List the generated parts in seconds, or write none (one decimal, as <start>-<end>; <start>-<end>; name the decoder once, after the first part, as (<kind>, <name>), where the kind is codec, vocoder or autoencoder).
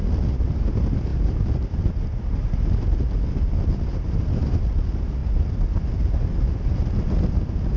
3.9-4.5 (vocoder, BigVGAN v2)